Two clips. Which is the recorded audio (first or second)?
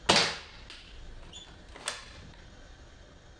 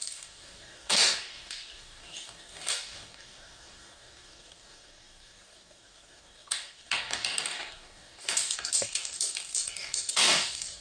first